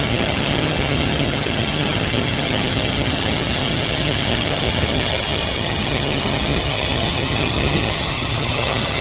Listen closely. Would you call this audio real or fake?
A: fake